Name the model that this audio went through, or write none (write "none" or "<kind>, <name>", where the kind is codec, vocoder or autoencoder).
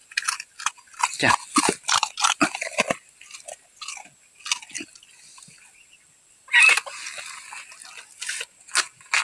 none